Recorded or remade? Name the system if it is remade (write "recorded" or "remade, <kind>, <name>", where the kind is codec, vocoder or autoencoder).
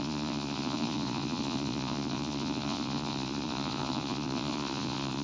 remade, vocoder, Vocos